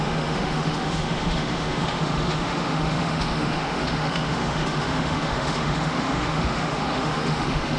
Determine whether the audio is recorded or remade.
remade